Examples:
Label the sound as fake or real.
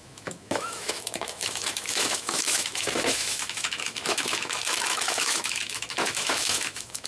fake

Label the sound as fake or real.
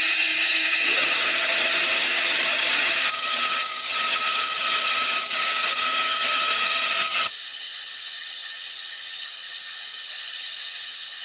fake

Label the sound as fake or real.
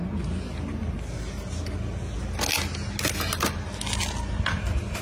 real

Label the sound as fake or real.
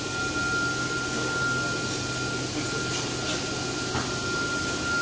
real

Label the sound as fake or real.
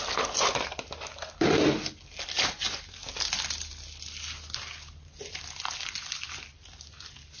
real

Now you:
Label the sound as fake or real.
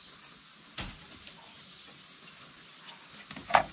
real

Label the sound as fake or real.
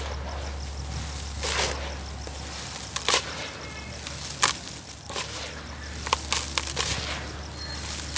real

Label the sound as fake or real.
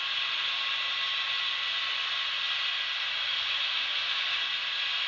real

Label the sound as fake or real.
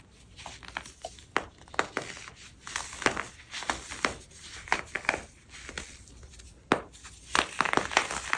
real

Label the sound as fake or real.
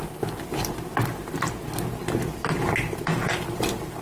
real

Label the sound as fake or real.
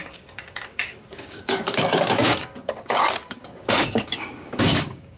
fake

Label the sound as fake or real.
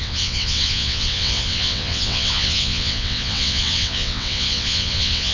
fake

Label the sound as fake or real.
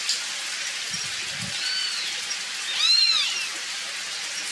real